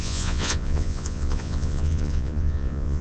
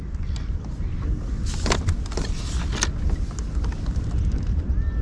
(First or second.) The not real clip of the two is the first